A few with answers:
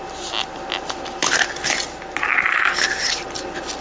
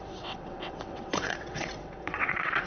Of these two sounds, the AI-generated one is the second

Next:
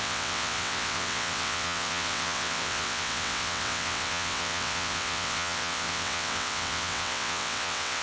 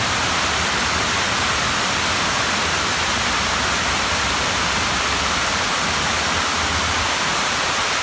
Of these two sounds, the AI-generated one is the first